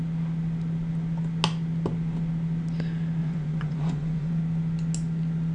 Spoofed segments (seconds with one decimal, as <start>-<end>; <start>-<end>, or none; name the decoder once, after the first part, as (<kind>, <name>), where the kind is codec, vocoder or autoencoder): 3.2-4.4 (vocoder, Vocos)